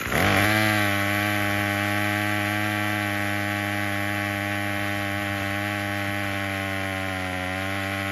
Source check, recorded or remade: recorded